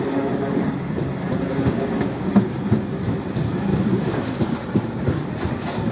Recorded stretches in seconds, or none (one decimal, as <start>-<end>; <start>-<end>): 0.0-1.5; 2.6-3.7; 4.8-5.9